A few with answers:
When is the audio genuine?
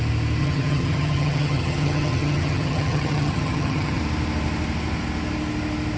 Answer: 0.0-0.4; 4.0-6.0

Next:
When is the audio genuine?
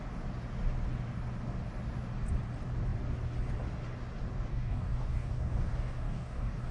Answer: 0.0-4.5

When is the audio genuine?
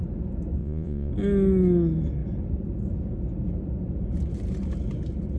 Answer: 0.0-0.6; 1.1-5.4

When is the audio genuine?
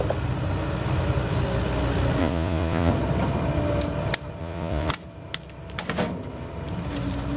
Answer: 0.0-2.2; 2.9-4.4; 4.9-7.4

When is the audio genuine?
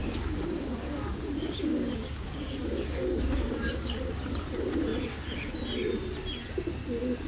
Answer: 4.4-7.3